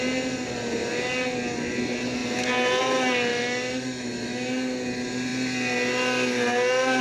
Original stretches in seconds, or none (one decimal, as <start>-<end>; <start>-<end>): 0.0-3.3; 4.5-7.0